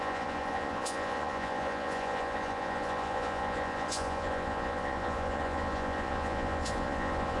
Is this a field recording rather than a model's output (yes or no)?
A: no